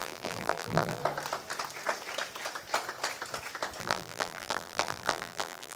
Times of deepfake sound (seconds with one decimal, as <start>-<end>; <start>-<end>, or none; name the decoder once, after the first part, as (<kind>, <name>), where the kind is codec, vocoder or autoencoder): 0.0-1.0 (vocoder, BigVGAN v2); 3.8-5.8